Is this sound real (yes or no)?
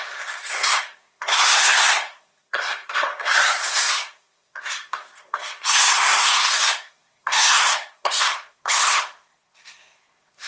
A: no